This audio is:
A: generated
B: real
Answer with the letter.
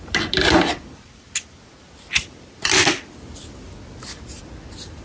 B